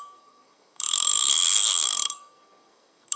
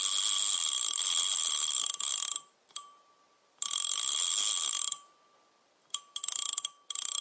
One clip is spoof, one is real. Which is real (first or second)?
second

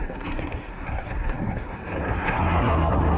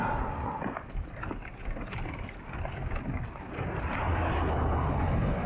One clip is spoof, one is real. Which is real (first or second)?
second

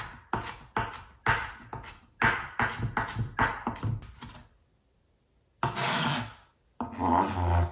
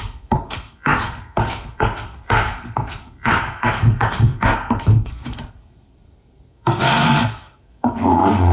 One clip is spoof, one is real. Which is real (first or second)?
first